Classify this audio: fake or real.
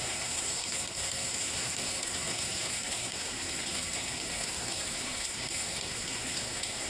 fake